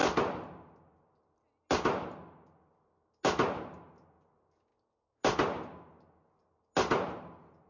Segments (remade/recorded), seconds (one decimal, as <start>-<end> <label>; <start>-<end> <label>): 0.0-7.7 recorded